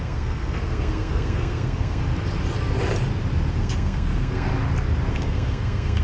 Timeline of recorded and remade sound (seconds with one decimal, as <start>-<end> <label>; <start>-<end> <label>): 0.0-2.0 remade; 2.0-3.5 recorded; 3.5-4.5 remade; 4.5-5.1 recorded; 5.1-6.0 remade